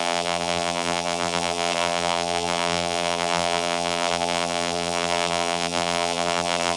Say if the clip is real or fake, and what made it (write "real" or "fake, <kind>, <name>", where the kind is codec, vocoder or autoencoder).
fake, vocoder, BigVGAN v2